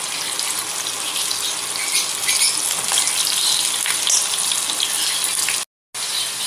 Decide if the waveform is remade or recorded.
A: recorded